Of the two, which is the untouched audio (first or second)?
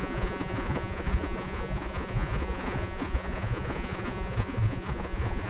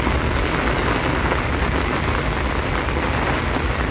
second